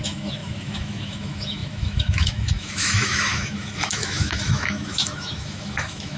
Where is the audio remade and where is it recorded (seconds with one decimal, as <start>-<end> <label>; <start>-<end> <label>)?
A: 0.0-6.2 remade